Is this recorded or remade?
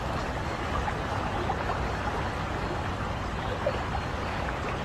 recorded